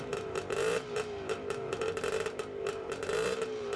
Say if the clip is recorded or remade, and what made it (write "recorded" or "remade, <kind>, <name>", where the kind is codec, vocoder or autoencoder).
remade, vocoder, BigVGAN v2